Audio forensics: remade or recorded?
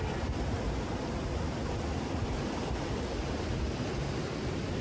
recorded